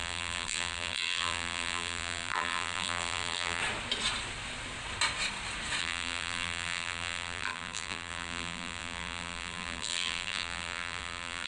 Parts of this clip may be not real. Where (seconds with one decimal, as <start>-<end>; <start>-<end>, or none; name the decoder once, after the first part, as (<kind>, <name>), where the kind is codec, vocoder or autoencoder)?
0.0-3.6 (vocoder, BigVGAN v2); 5.8-11.5